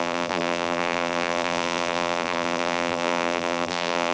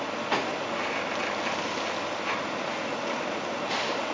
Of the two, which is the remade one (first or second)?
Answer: first